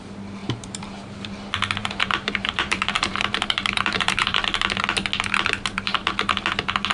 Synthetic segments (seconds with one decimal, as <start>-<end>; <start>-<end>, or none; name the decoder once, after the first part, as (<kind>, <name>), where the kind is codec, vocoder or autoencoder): 0.4-1.3 (vocoder, BigVGAN v2); 1.8-4.4; 5.7-6.3